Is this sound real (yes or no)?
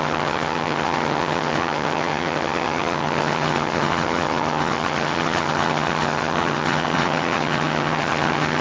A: no